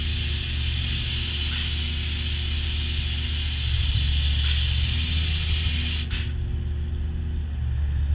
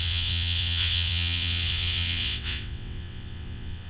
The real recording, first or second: first